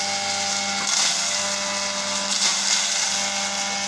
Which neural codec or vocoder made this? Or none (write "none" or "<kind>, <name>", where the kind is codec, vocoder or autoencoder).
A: none